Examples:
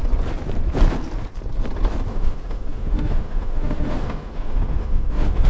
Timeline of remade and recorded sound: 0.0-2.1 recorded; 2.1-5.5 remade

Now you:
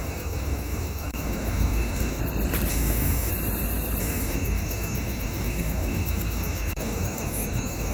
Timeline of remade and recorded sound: 0.0-2.2 remade; 2.2-2.7 recorded; 2.7-3.3 remade; 3.3-4.0 recorded; 4.0-7.9 remade

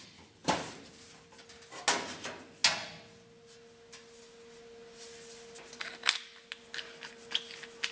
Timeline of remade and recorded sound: 0.0-0.4 recorded; 0.4-1.1 remade; 1.1-7.9 recorded

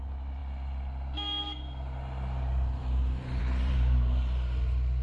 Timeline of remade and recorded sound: 0.0-5.0 recorded